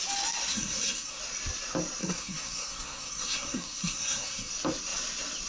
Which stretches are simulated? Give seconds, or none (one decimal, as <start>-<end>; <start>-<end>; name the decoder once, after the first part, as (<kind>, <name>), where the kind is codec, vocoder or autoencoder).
0.5-1.2 (codec, SNAC); 2.0-4.5